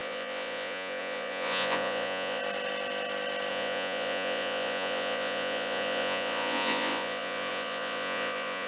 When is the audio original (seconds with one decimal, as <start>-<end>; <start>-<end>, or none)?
2.4-3.5